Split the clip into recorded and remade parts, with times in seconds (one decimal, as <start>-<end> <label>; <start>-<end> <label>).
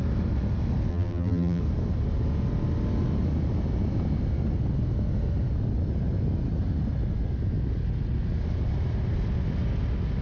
0.0-0.9 recorded; 0.9-1.6 remade; 1.6-10.2 recorded